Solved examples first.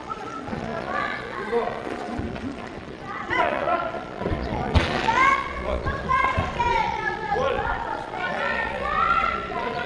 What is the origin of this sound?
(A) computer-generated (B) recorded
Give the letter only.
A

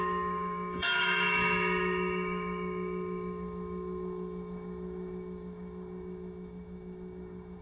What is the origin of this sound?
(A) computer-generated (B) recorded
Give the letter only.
A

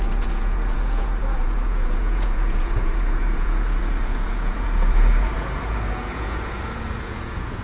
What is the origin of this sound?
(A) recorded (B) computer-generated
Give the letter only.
B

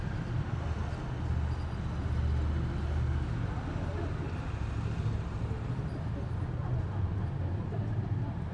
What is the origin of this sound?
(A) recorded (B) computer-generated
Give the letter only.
A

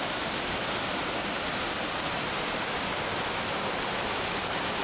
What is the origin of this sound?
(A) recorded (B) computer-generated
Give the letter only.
A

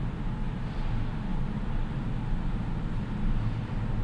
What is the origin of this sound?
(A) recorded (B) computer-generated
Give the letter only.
A